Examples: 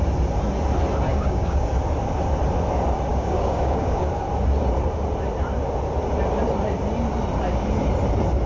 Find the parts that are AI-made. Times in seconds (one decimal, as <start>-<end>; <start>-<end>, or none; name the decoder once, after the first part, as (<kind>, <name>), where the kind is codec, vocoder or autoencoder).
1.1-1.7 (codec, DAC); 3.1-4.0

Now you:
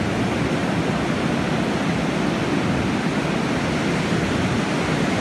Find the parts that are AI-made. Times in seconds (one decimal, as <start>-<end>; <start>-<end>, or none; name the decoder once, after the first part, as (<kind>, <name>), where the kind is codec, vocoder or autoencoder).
none

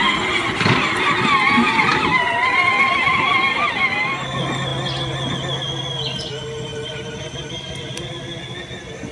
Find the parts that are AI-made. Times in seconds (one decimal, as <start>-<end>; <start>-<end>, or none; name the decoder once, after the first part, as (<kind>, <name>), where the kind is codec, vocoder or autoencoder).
none

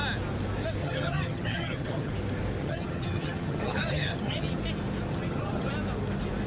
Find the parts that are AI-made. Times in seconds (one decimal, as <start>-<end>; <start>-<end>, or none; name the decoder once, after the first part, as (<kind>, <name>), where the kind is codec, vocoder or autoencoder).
0.8-2.1 (vocoder, HiFi-GAN); 2.6-4.6; 5.1-5.7

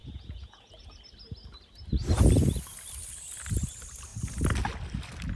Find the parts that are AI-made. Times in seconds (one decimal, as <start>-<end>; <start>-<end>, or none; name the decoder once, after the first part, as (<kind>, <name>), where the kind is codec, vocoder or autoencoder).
0.0-0.9 (vocoder, Vocos)

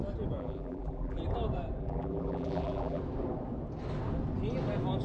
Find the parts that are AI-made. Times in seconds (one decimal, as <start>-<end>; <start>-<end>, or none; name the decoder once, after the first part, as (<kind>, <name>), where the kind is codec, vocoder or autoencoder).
0.4-1.2 (vocoder, BigVGAN v2); 1.8-3.0